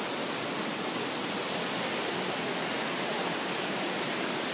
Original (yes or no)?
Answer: yes